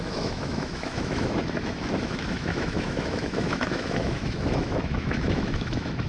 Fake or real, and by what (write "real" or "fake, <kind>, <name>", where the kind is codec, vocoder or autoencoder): fake, autoencoder, DAC-VAE